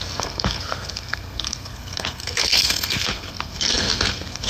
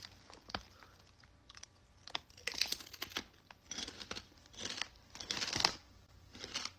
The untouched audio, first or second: second